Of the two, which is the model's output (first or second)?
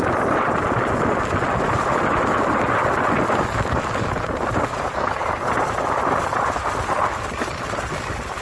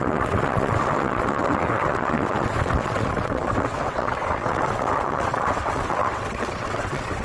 second